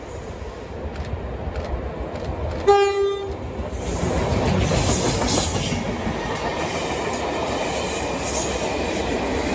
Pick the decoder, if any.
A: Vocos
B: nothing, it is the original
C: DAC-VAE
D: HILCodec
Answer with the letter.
B